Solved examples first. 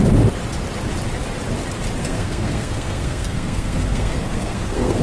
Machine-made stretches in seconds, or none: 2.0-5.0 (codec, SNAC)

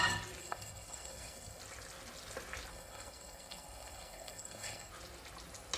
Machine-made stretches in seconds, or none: 0.4-1.6 (codec, SNAC); 2.7-4.9

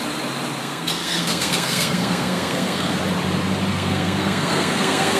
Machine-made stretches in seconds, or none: 0.6-3.0 (codec, SNAC); 3.7-5.2

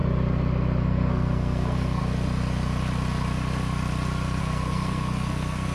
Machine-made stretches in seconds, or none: 0.8-2.0 (codec, SNAC); 4.4-5.7

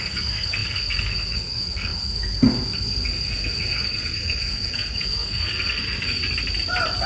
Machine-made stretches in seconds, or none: 0.0-6.2 (codec, SNAC)

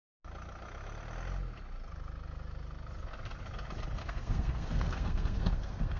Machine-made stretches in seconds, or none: 4.0-6.0 (codec, SNAC)

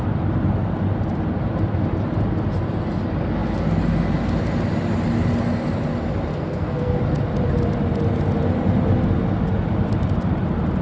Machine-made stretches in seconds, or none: 6.3-7.0 (codec, SNAC)

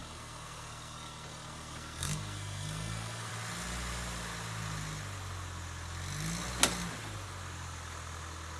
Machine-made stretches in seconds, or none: 0.0-3.3 (codec, SNAC)